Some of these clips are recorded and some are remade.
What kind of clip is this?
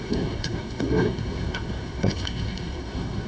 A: remade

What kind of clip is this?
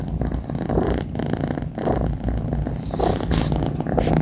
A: recorded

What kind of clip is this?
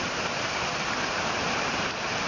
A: recorded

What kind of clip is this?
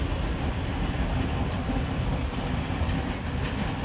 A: recorded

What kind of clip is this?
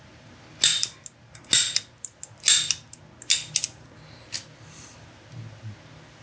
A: recorded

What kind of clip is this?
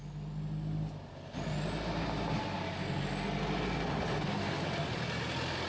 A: recorded